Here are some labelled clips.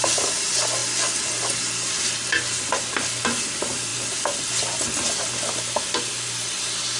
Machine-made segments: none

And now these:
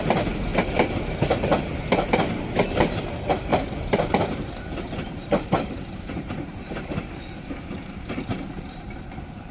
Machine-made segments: 0.0-0.5 (vocoder, BigVGAN v2); 3.0-9.5

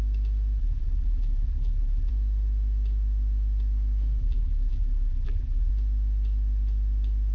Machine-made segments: 0.6-2.1 (vocoder, BigVGAN v2); 4.2-5.7

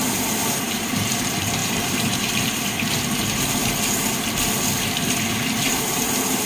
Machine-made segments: 0.0-3.6 (vocoder, BigVGAN v2); 5.6-6.5